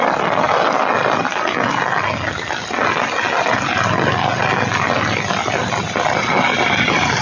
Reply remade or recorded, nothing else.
recorded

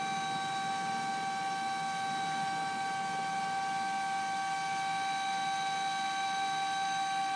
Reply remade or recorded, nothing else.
recorded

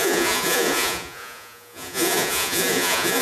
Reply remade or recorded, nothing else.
remade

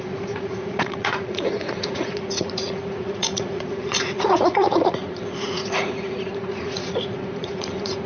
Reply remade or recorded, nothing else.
remade